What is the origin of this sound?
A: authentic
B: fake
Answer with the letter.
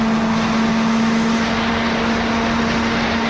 A